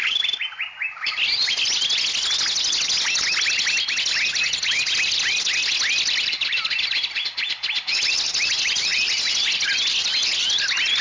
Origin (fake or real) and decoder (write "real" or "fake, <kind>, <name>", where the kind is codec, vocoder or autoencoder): real